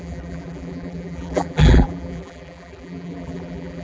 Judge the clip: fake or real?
fake